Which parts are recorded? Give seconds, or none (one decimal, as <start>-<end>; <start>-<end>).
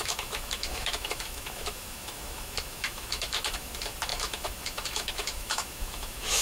none